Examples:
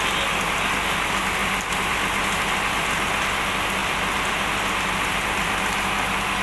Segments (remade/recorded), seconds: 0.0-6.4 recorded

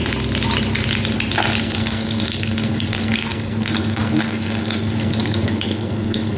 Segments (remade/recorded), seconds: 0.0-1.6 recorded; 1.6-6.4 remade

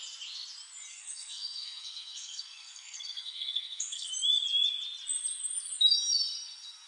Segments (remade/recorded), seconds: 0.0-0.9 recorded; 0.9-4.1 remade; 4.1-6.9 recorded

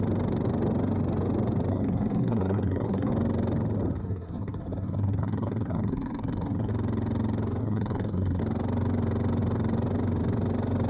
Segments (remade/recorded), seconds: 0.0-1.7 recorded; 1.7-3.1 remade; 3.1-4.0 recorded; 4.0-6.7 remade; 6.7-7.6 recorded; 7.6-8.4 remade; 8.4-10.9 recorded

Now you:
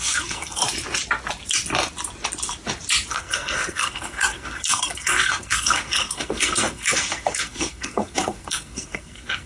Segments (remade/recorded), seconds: 0.0-0.6 remade; 0.6-3.1 recorded; 3.1-9.5 remade

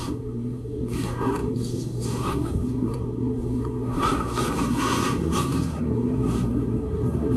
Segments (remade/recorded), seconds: 0.0-7.4 remade

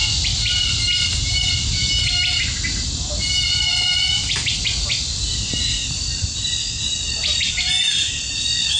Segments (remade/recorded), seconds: 0.0-8.8 recorded

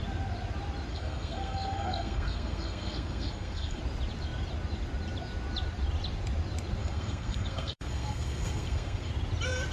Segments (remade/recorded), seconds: 0.0-0.9 recorded; 0.9-3.8 remade; 3.8-6.8 recorded; 6.8-9.1 remade; 9.1-9.7 recorded